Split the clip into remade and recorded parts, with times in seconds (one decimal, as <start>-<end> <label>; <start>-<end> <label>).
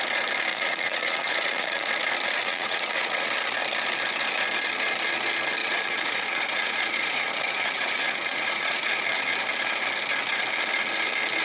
0.0-0.5 recorded; 0.5-1.9 remade; 1.9-2.4 recorded; 2.4-3.3 remade; 3.3-5.6 recorded; 5.6-8.9 remade; 8.9-11.4 recorded